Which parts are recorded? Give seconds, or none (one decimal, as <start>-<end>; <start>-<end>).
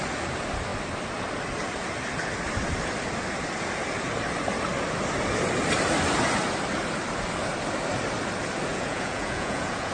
0.0-8.7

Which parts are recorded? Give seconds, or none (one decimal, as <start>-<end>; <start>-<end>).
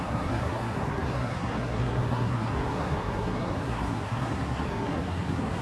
none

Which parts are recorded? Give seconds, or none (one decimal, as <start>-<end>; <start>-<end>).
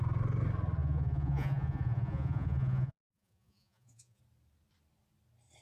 0.0-0.8; 4.2-5.6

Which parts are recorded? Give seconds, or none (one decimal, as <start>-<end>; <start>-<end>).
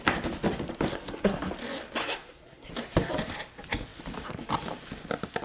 0.0-0.9; 1.5-2.0; 2.7-5.4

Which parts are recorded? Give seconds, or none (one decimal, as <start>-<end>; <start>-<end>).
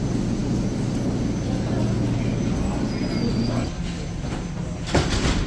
0.0-5.5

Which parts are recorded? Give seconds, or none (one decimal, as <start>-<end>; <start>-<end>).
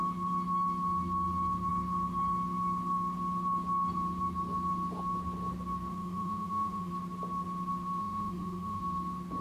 0.0-5.9; 6.9-8.0; 8.8-9.4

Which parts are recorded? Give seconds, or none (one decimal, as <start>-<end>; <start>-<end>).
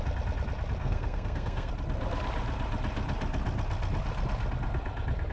0.0-0.8; 1.7-5.3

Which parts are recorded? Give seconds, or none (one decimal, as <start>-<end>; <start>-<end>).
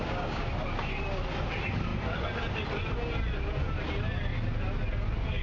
0.5-5.4